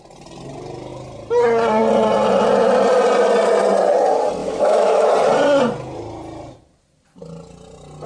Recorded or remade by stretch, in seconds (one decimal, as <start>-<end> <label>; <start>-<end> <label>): 0.0-4.4 recorded; 4.4-5.1 remade; 5.1-8.1 recorded